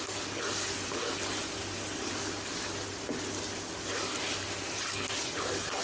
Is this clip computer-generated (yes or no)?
no